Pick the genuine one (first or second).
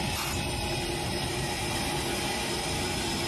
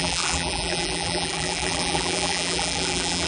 first